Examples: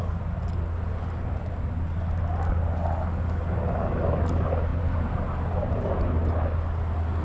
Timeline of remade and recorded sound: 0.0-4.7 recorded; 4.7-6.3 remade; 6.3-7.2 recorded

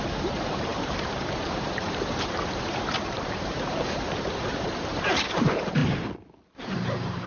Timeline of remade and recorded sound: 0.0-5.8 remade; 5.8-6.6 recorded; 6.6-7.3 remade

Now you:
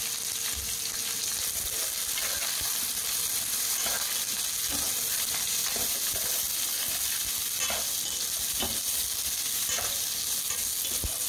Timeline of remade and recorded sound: 0.0-11.3 recorded

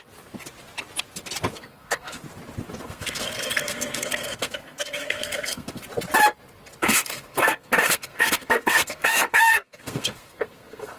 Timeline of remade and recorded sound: 0.0-1.5 recorded; 1.5-2.2 remade; 2.2-2.8 recorded; 2.8-5.8 remade; 5.8-6.8 recorded; 6.8-11.0 remade